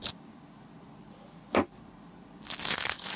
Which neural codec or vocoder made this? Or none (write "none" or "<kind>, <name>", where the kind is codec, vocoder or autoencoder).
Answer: none